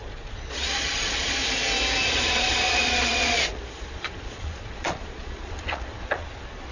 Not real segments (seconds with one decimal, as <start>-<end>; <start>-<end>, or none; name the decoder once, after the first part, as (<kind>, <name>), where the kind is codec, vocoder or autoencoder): 0.0-1.4 (vocoder, Vocos); 2.1-6.7